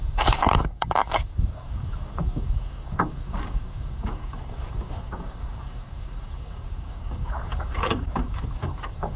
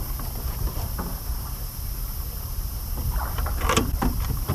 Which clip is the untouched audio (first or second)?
second